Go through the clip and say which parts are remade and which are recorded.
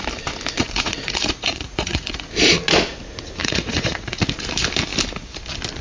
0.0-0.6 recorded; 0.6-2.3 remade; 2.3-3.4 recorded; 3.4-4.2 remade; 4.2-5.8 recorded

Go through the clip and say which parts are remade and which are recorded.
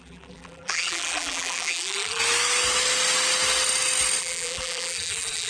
0.0-2.2 remade; 2.2-4.2 recorded; 4.2-5.5 remade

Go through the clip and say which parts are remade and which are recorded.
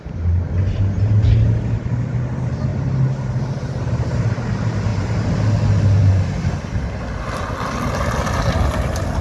0.0-9.2 recorded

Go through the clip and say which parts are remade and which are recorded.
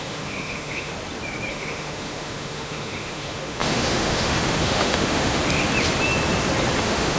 0.0-0.9 remade; 0.9-1.5 recorded; 1.5-5.4 remade; 5.4-6.8 recorded; 6.8-7.2 remade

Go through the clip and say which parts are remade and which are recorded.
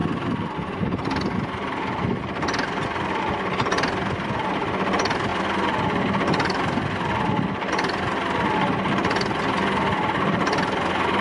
0.0-11.2 recorded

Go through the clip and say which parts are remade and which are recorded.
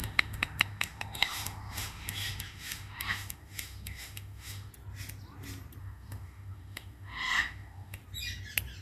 0.0-4.7 remade; 4.7-5.8 recorded; 5.8-8.0 remade; 8.0-8.8 recorded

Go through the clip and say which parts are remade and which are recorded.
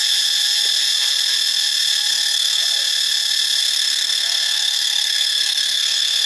0.0-2.1 recorded; 2.1-2.6 remade; 2.6-3.6 recorded; 3.6-6.3 remade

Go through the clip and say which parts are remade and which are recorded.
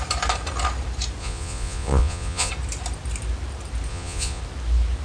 0.0-1.2 recorded; 1.2-2.5 remade; 2.5-3.9 recorded; 3.9-4.4 remade; 4.4-5.0 recorded